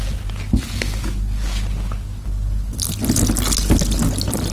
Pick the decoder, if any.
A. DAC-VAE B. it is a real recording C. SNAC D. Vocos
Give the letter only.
B